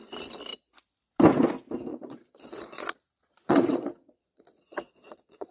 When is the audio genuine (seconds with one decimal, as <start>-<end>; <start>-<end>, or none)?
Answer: 0.0-1.9